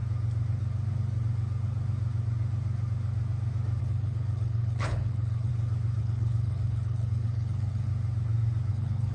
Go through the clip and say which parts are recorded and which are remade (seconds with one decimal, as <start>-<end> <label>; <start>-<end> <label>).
0.0-3.8 recorded; 3.8-5.5 remade; 5.5-6.0 recorded; 6.0-7.9 remade; 7.9-8.7 recorded; 8.7-9.1 remade